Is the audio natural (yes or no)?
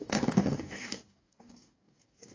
no